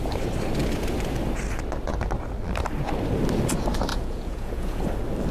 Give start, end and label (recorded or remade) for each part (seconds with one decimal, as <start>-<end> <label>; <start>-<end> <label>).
0.0-3.9 recorded; 3.9-4.8 remade; 4.8-5.3 recorded